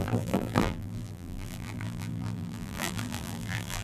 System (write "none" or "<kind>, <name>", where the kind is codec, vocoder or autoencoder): vocoder, BigVGAN v2